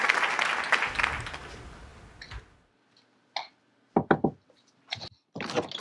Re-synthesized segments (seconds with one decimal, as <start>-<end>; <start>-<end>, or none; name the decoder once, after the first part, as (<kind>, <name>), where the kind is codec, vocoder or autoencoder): none